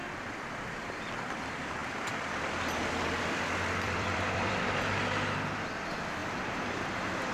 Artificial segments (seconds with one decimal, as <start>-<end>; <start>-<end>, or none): 0.0-1.4; 1.8-4.8; 6.2-7.3